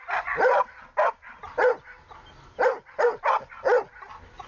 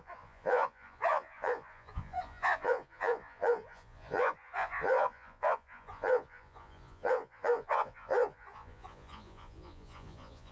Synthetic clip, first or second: second